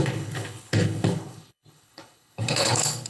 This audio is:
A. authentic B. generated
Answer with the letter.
B